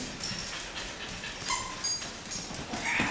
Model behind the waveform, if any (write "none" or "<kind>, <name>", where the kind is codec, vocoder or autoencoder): none